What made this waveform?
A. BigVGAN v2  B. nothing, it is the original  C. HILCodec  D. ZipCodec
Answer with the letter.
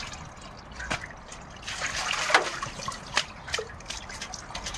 B